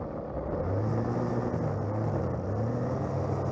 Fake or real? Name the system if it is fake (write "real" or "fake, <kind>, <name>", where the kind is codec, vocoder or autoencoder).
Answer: real